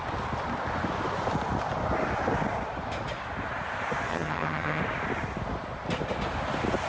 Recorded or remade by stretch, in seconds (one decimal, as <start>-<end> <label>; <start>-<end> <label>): 0.0-4.1 recorded; 4.1-4.8 remade; 4.8-6.9 recorded